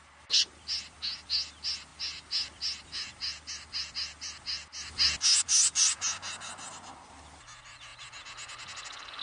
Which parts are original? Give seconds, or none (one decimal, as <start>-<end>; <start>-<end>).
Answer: 0.0-9.2